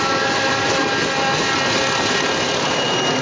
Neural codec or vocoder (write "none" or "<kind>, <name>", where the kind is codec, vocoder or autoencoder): none